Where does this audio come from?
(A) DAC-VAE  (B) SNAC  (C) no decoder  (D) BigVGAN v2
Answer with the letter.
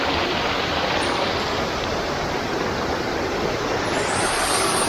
C